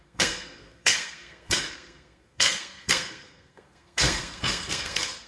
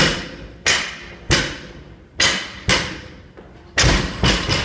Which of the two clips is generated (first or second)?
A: first